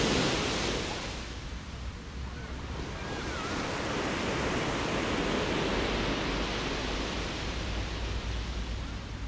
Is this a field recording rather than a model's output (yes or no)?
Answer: yes